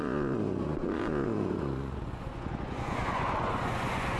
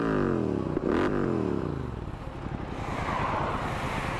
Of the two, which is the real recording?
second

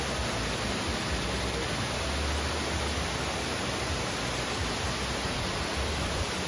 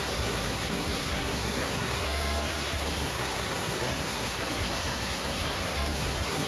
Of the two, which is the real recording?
first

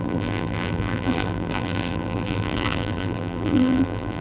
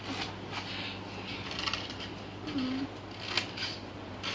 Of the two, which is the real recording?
second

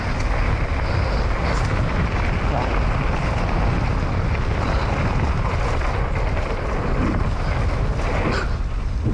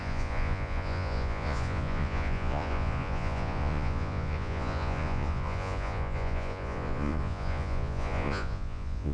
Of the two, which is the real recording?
first